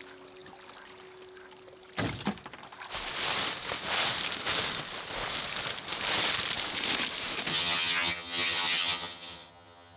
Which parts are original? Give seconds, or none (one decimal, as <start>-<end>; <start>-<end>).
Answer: 0.0-7.5